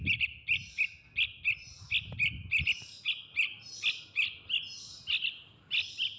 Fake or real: real